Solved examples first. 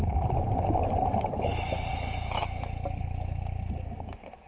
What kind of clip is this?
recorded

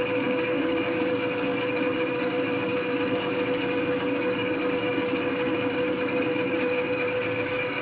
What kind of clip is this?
remade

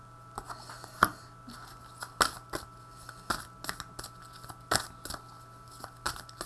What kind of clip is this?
recorded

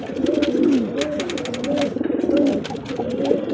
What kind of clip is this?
recorded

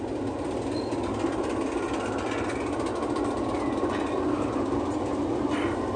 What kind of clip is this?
recorded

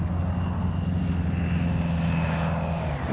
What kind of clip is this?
recorded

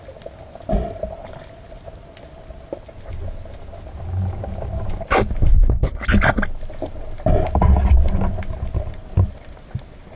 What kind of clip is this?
recorded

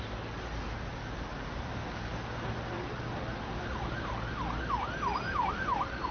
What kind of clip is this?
recorded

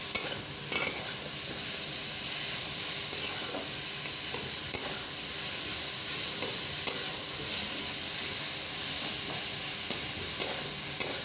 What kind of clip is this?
recorded